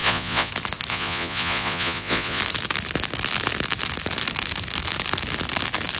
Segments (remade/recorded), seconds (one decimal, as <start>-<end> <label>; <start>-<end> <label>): 0.0-0.5 remade; 0.5-0.9 recorded; 0.9-2.4 remade; 2.4-6.0 recorded